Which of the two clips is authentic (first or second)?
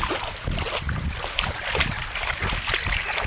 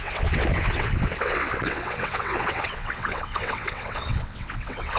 first